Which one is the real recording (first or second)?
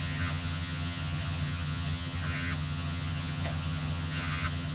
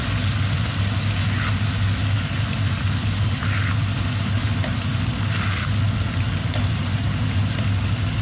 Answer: second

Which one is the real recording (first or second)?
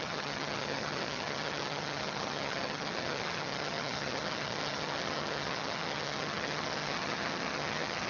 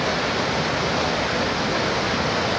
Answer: second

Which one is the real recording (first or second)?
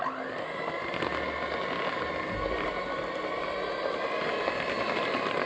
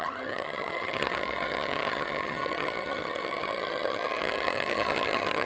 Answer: first